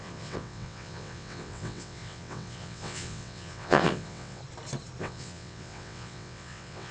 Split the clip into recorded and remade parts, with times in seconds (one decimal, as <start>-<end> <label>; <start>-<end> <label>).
0.0-4.4 remade; 4.4-5.0 recorded; 5.0-6.9 remade